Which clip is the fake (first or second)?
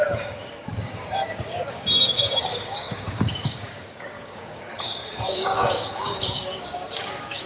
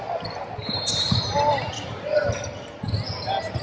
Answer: first